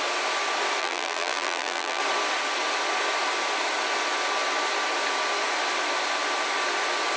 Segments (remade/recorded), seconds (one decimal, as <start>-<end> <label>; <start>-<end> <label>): 0.0-0.8 recorded; 0.8-2.0 remade; 2.0-7.2 recorded

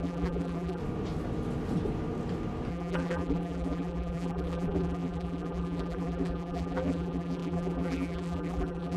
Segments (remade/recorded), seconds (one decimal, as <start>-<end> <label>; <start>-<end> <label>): 0.0-0.8 remade; 0.8-2.7 recorded; 2.7-9.0 remade

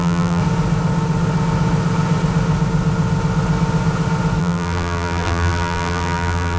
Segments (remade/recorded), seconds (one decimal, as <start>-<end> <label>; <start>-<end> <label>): 0.0-0.4 remade; 0.4-4.4 recorded; 4.4-6.6 remade